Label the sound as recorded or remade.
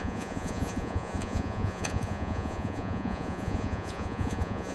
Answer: remade